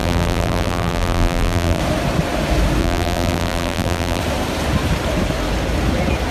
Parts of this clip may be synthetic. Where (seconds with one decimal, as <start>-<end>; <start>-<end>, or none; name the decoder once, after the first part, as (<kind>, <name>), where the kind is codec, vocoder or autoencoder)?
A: 0.0-1.8 (vocoder, BigVGAN v2); 2.8-4.2

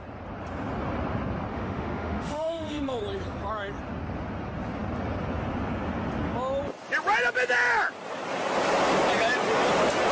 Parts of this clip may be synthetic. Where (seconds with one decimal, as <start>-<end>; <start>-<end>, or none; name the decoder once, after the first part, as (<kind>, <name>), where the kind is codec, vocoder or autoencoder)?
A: 1.5-3.0 (autoencoder, DAC-VAE)

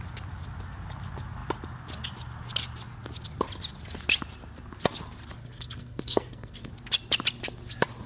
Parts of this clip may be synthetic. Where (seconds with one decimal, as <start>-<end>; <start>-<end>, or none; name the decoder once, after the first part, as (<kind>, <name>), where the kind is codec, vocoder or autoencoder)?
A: 5.4-6.7 (codec, SNAC)

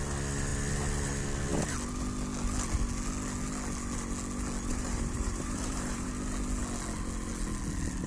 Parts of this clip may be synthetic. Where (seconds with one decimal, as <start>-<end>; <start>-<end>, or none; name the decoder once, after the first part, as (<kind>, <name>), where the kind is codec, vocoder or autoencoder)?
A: 4.7-6.1 (vocoder, BigVGAN v2)

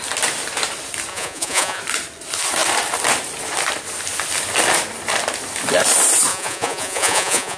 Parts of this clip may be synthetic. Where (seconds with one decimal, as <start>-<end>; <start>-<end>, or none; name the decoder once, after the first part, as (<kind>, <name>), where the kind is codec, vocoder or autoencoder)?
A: 1.1-1.8 (vocoder, Vocos); 6.3-7.6

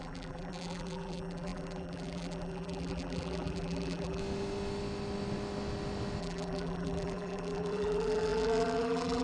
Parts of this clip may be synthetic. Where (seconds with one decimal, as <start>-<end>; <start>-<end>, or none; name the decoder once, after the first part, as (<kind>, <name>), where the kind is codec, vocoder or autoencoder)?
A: 0.0-4.2 (vocoder, BigVGAN v2); 6.2-9.2

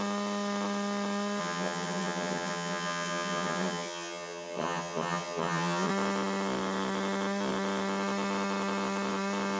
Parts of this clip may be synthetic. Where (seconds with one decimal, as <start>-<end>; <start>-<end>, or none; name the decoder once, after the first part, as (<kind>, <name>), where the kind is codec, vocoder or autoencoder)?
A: 1.4-5.9 (vocoder, HiFi-GAN)

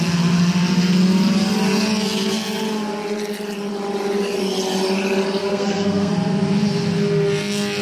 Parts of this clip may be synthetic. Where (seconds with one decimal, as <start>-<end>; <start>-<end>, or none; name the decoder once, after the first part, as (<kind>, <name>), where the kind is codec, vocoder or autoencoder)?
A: 5.4-6.1 (codec, SNAC)